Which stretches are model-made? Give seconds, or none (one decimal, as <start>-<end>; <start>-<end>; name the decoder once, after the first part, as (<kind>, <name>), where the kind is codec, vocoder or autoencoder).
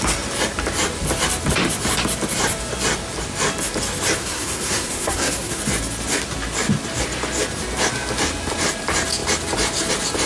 4.2-5.6 (codec, SNAC)